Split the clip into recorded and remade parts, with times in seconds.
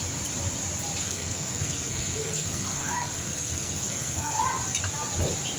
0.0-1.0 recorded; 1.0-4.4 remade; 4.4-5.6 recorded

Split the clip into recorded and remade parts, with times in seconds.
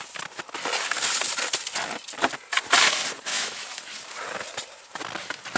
0.0-3.3 recorded; 3.3-3.8 remade; 3.8-5.6 recorded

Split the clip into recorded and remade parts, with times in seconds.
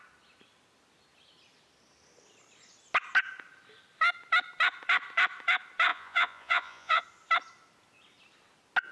0.0-5.9 recorded; 5.9-7.0 remade; 7.0-8.9 recorded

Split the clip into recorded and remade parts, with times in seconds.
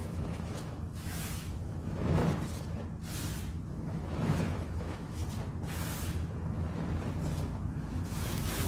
0.0-2.2 remade; 2.2-3.7 recorded; 3.7-5.2 remade; 5.2-7.4 recorded; 7.4-8.7 remade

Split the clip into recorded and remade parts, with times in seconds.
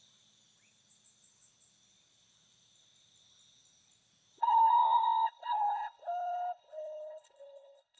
0.0-4.4 recorded; 4.4-8.0 remade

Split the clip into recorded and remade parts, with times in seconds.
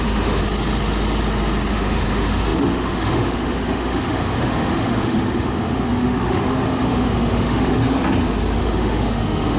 0.0-0.4 remade; 0.4-1.7 recorded; 1.7-7.8 remade; 7.8-8.6 recorded; 8.6-9.6 remade